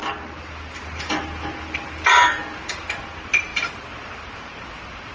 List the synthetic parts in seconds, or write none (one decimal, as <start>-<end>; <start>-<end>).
0.0-3.1; 3.5-5.1